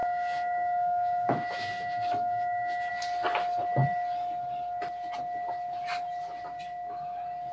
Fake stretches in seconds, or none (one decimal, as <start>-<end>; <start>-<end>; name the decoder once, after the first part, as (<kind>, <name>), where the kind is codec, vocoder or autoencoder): 0.0-2.9 (autoencoder, DAC-VAE)